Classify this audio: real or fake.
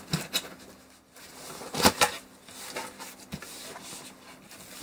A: real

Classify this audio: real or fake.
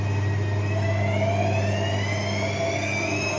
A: real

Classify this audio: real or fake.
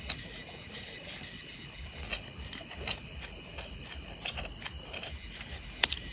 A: real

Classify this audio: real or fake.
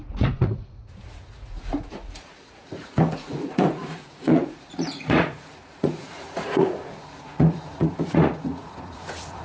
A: fake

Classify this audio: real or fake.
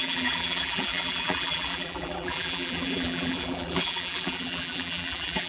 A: fake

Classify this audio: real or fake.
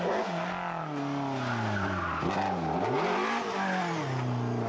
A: real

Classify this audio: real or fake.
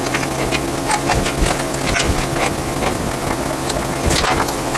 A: real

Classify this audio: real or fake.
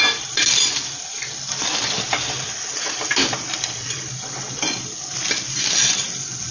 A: real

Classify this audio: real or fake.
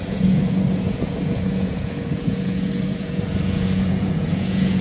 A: fake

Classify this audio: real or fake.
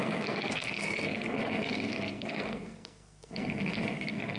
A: fake